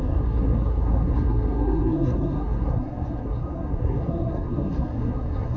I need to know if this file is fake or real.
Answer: fake